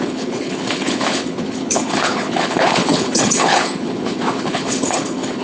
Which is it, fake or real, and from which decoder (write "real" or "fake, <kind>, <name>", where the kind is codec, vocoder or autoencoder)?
fake, codec, HILCodec